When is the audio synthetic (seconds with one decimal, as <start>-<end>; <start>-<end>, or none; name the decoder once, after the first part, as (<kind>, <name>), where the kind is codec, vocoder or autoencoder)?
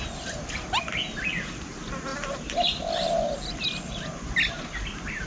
none